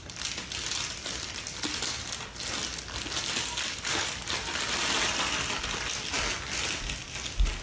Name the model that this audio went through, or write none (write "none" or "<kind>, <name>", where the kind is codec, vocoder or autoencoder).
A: none